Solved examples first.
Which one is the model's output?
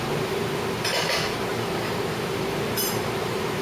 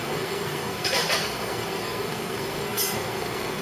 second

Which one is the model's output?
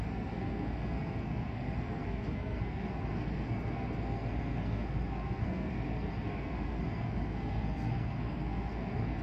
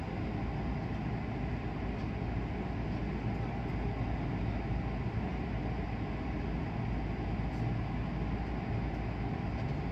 first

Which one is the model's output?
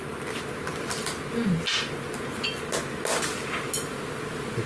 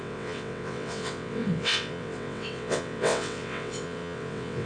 second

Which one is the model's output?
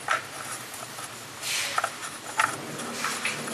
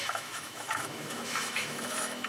second